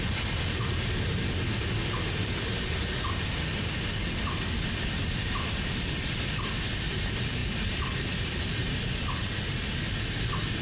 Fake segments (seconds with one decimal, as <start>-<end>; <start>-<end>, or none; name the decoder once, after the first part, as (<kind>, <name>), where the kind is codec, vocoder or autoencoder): none